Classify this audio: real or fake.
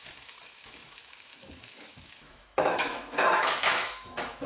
fake